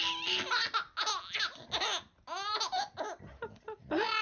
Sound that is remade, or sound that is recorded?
recorded